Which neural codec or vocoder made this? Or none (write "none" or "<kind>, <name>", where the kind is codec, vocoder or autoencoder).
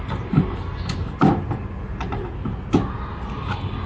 none